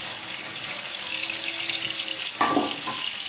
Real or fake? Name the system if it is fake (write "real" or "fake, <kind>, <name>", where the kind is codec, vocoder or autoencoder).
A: fake, codec, DAC